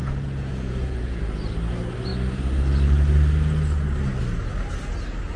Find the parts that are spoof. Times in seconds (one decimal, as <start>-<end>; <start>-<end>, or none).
0.0-1.2